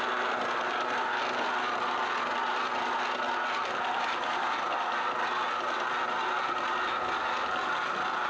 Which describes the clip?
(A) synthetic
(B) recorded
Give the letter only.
B